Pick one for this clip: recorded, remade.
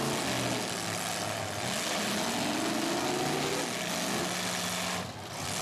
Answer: recorded